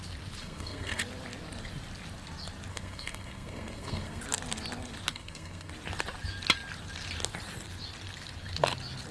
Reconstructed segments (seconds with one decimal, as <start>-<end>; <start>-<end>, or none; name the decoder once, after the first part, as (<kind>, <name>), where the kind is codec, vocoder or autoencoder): 0.4-1.0 (codec, SNAC); 2.7-4.2; 5.1-5.7